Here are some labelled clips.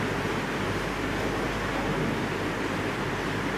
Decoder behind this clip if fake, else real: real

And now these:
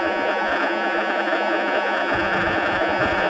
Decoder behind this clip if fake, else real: fake, vocoder, Vocos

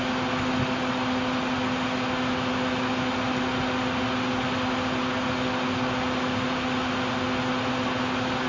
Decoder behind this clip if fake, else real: real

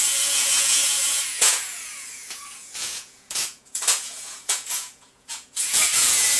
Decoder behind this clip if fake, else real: fake, vocoder, Vocos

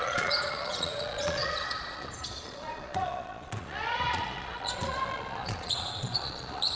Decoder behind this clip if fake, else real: fake, vocoder, Vocos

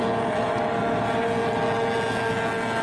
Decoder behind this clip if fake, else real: real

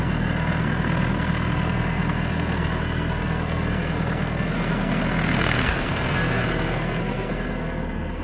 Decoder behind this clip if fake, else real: fake, codec, SNAC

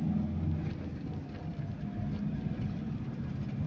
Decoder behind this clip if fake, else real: real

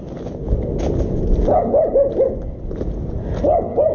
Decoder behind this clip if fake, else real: real